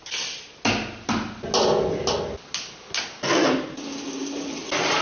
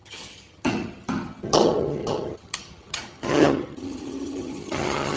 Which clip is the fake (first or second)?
second